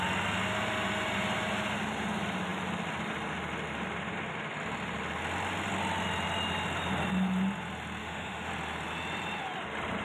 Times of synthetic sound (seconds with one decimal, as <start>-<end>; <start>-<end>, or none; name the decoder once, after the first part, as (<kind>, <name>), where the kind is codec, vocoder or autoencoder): 8.0-8.5 (autoencoder, DAC-VAE)